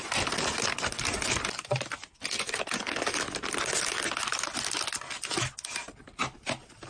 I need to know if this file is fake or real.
real